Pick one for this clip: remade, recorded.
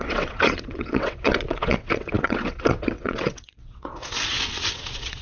remade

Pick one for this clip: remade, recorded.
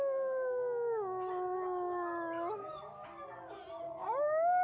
recorded